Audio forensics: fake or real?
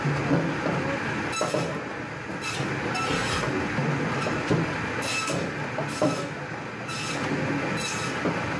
real